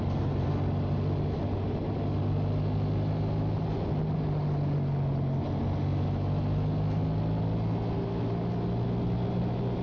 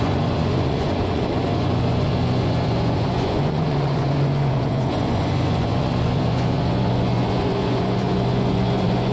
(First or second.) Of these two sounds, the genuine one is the first